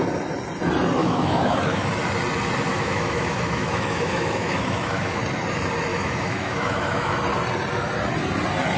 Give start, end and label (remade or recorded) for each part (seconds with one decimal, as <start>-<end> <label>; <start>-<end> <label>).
0.0-1.0 recorded; 1.0-1.9 remade; 1.9-2.7 recorded; 2.7-5.2 remade; 5.2-5.9 recorded; 5.9-7.1 remade; 7.1-8.8 recorded